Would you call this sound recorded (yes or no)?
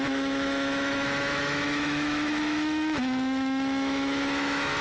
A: no